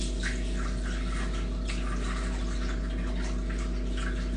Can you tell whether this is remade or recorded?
recorded